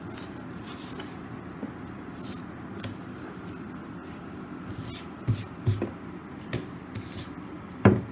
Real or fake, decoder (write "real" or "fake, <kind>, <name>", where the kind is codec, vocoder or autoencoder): real